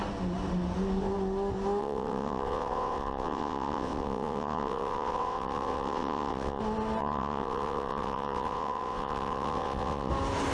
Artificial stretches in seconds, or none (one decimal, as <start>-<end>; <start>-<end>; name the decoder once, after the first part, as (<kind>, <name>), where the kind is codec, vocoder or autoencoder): 1.8-6.6 (vocoder, WaveNeXt); 7.0-10.1